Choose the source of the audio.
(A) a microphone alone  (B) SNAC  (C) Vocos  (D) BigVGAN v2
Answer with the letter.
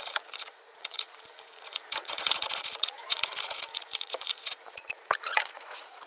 C